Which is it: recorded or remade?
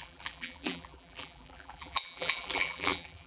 remade